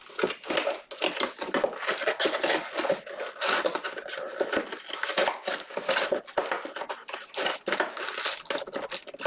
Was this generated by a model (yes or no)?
no